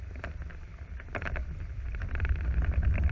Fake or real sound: fake